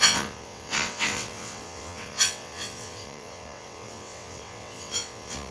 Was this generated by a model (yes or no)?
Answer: yes